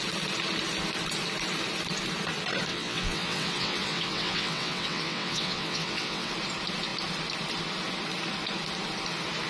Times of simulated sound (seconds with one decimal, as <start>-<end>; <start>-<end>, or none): 2.7-6.3